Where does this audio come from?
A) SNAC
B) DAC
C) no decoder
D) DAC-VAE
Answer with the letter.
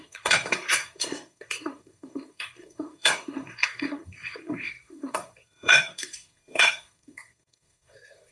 A